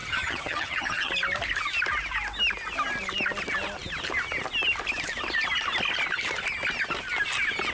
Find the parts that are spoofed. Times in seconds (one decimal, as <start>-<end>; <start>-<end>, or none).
0.0-1.1